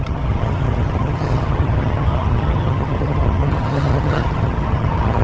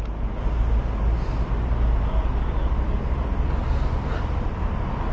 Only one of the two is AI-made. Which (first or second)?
first